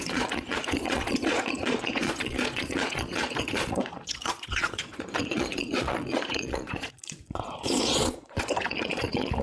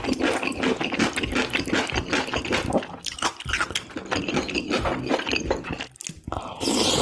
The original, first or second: second